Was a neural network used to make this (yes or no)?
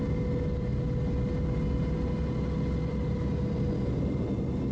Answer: no